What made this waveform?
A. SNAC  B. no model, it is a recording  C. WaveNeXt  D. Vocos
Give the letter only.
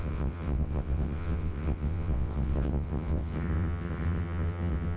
C